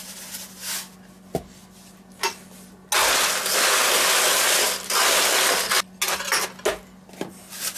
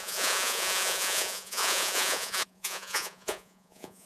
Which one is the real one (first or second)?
first